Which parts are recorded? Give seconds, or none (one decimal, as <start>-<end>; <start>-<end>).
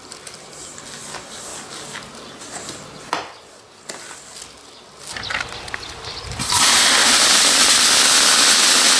0.0-9.0